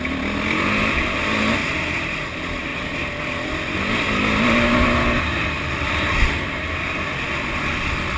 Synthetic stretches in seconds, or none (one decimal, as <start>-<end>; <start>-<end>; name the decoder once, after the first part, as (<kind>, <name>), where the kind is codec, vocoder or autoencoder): none